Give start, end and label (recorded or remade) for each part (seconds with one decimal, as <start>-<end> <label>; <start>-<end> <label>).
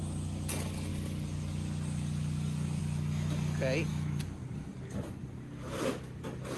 0.0-6.6 recorded